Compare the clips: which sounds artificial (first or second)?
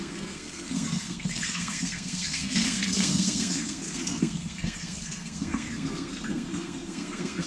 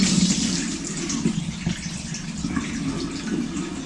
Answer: first